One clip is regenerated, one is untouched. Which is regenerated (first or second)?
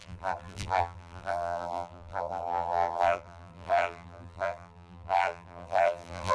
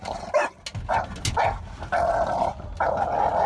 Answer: first